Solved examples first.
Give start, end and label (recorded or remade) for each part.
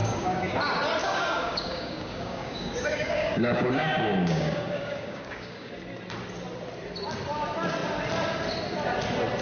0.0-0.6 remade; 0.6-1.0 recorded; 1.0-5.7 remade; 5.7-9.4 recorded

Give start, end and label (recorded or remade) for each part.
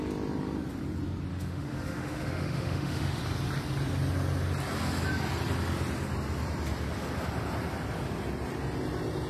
0.0-1.3 recorded; 1.3-3.2 remade; 3.2-9.3 recorded